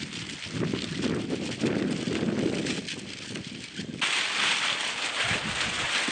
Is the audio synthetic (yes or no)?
no